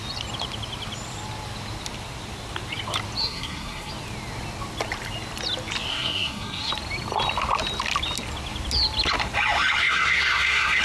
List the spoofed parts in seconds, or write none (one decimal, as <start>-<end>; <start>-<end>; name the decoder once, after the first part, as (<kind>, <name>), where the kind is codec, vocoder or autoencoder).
3.2-3.9 (codec, SNAC); 5.9-6.7; 9.8-10.8